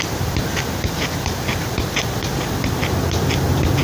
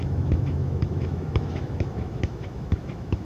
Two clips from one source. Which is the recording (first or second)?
first